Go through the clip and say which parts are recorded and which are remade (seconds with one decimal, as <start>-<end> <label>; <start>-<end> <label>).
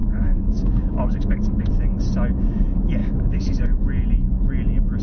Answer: 0.0-1.7 remade; 1.7-3.0 recorded; 3.0-3.8 remade; 3.8-5.0 recorded